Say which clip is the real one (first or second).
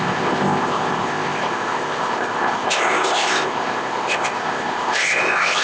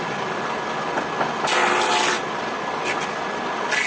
second